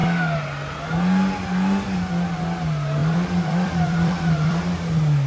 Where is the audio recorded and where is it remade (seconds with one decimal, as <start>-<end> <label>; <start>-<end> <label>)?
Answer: 0.0-3.0 recorded; 3.0-4.6 remade; 4.6-5.3 recorded